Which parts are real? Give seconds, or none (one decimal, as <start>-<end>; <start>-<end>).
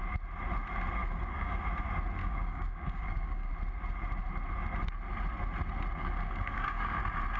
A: 0.0-1.0; 1.6-2.2; 3.5-6.0; 7.0-7.4